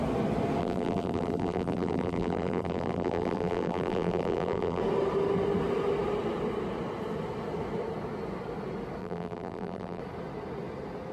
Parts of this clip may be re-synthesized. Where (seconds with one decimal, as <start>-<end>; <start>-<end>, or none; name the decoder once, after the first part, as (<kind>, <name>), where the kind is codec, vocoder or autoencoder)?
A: 0.6-4.8 (vocoder, BigVGAN v2); 9.0-10.0